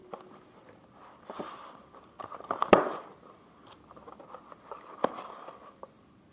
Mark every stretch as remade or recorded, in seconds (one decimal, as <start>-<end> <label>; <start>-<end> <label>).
0.0-3.8 remade; 3.8-6.3 recorded